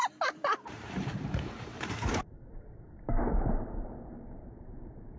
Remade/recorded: remade